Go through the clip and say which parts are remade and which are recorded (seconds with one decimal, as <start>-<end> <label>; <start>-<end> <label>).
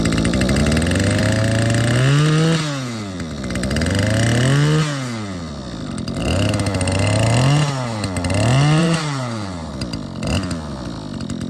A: 0.0-8.8 recorded; 8.8-9.7 remade; 9.7-11.5 recorded